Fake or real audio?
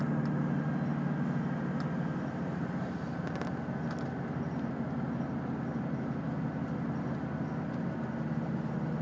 real